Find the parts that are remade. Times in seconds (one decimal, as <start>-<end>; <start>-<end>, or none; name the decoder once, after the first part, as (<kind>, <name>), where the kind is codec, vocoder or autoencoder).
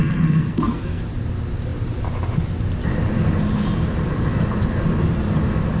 0.0-1.0 (codec, SNAC)